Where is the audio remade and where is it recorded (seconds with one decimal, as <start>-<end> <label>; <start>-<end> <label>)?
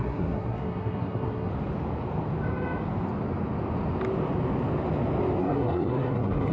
0.0-1.5 remade; 1.5-5.4 recorded; 5.4-6.5 remade